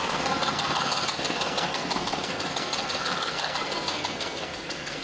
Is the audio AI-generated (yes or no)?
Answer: yes